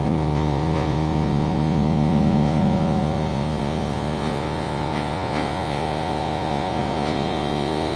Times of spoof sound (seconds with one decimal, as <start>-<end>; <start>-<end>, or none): 0.0-8.0